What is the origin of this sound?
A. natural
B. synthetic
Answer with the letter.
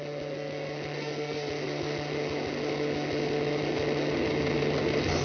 A